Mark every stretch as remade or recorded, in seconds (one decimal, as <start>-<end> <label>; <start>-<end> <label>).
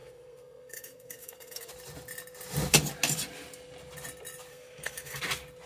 0.0-1.7 remade; 1.7-4.5 recorded; 4.5-5.2 remade; 5.2-5.7 recorded